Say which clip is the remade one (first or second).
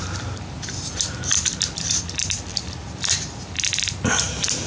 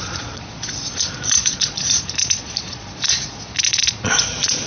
second